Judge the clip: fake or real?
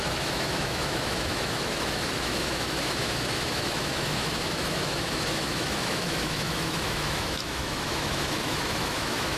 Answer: fake